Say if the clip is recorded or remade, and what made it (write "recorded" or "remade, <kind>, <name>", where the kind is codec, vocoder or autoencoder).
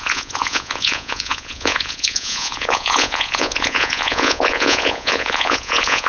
remade, vocoder, Vocos